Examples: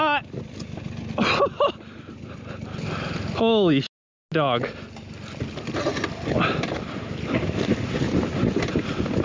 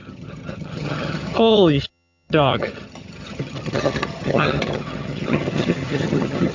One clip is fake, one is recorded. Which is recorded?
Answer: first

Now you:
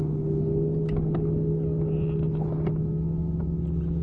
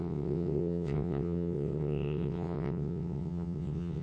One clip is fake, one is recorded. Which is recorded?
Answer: first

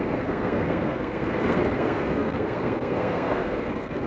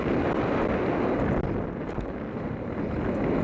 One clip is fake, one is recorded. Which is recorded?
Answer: second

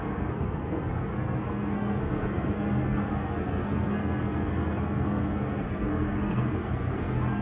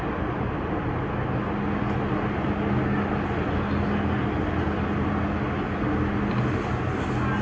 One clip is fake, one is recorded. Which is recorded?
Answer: second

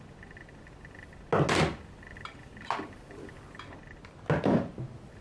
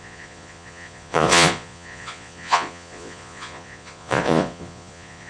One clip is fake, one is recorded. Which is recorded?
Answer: first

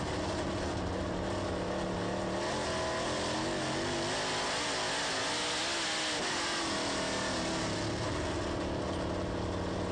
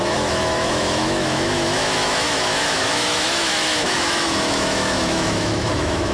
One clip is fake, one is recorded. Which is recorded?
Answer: first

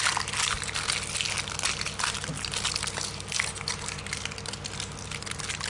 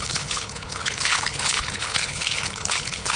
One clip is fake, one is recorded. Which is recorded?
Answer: first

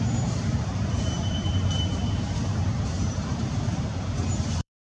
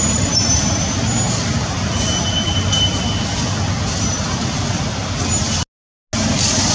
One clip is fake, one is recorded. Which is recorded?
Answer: second